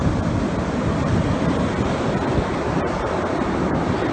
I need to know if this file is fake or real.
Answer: real